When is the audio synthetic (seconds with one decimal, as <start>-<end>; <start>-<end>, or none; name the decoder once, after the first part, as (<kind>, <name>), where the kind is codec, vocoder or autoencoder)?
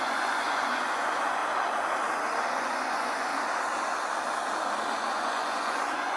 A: 0.0-1.4 (vocoder, Vocos); 2.5-3.3; 5.1-6.2